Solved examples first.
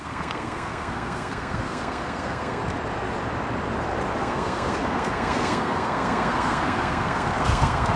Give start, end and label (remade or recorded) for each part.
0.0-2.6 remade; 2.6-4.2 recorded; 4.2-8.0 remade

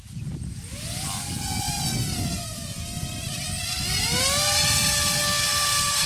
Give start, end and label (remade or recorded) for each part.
0.0-5.2 recorded; 5.2-6.1 remade